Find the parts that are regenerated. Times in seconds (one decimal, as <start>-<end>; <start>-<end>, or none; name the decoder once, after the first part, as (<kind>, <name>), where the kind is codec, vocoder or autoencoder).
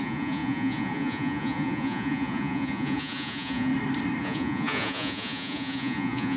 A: 0.0-3.7 (vocoder, Vocos); 4.2-6.4